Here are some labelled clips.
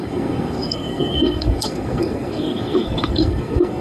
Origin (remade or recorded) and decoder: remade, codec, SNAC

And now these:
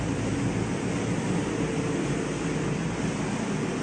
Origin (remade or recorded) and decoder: recorded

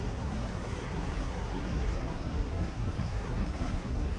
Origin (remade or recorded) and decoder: remade, codec, SNAC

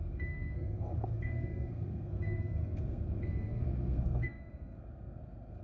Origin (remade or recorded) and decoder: remade, codec, SNAC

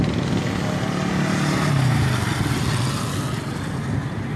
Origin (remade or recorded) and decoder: recorded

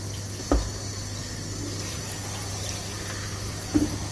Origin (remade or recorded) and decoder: recorded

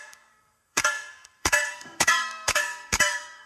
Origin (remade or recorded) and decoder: remade, codec, SNAC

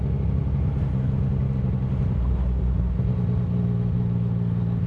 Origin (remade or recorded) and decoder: recorded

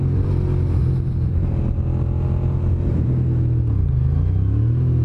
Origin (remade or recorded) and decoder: recorded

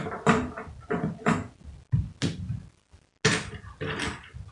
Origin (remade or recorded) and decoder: recorded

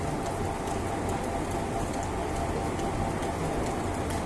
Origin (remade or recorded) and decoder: recorded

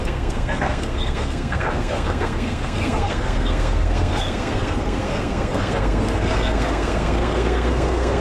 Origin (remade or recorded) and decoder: remade, codec, SNAC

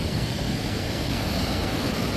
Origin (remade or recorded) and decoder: remade, codec, SNAC